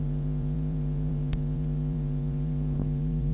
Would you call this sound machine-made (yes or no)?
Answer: yes